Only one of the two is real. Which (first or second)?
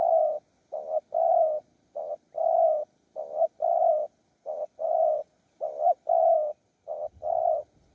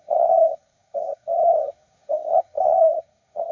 first